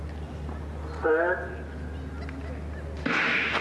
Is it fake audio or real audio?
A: real